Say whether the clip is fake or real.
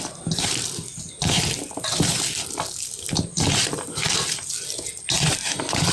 real